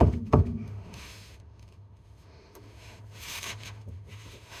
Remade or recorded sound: remade